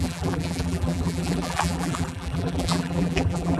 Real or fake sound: fake